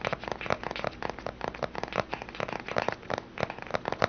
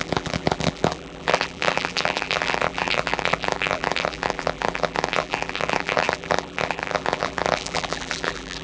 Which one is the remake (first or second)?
second